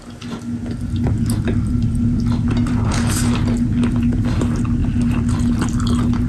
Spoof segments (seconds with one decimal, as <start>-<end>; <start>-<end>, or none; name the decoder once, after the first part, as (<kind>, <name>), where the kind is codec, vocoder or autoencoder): none